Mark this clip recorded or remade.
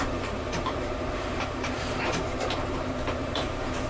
remade